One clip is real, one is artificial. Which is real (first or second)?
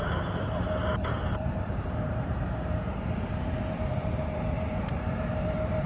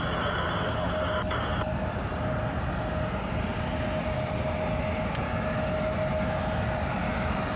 second